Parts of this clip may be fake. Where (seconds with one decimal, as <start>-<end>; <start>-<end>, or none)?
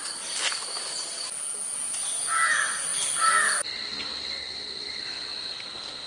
none